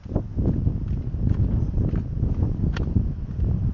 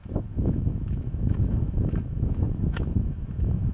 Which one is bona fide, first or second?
first